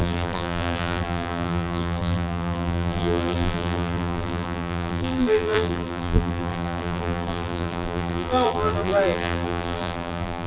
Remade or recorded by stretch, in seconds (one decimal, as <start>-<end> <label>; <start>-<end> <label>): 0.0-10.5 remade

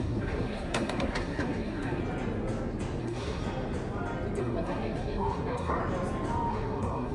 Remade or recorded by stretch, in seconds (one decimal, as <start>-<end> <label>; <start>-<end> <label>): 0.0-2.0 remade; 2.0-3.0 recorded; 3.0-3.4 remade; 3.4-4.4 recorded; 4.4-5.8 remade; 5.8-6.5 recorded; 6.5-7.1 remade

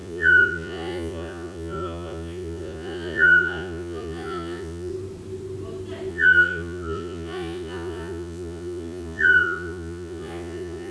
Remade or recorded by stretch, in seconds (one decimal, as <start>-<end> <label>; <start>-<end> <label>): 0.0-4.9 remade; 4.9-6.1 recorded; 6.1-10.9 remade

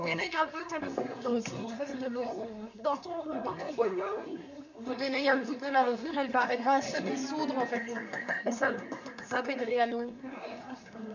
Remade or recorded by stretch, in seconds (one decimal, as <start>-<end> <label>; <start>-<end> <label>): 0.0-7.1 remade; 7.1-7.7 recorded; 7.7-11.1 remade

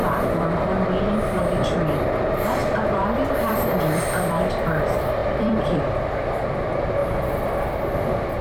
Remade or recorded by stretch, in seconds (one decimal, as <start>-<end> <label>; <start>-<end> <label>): 0.0-0.7 remade; 0.7-2.6 recorded; 2.6-4.6 remade; 4.6-5.2 recorded; 5.2-5.8 remade; 5.8-8.4 recorded

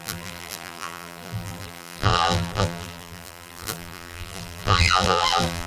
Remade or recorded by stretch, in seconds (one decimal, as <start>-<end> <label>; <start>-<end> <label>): 0.0-5.7 remade

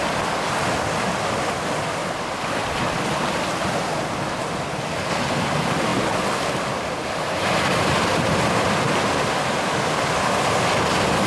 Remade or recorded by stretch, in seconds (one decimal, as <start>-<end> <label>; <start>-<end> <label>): 0.0-11.3 recorded

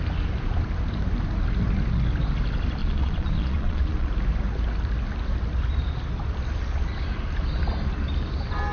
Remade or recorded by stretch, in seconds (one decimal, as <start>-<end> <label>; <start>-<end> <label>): 0.0-2.8 recorded; 2.8-4.1 remade; 4.1-8.7 recorded